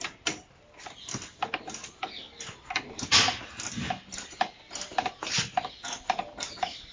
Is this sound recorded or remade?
recorded